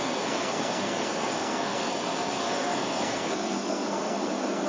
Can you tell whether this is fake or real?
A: fake